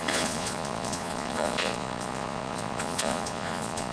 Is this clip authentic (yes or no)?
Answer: no